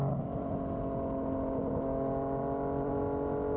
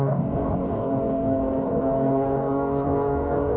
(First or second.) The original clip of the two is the first